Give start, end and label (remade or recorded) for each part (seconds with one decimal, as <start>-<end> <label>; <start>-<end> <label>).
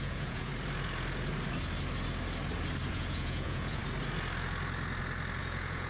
0.0-0.5 remade; 0.5-2.9 recorded; 2.9-3.8 remade; 3.8-5.4 recorded; 5.4-5.9 remade